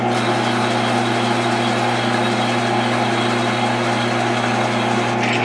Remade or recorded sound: recorded